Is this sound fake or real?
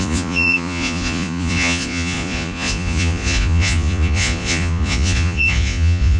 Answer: fake